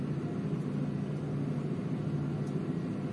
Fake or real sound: real